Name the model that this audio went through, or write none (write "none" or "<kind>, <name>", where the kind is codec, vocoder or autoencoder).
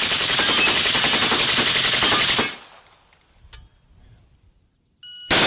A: none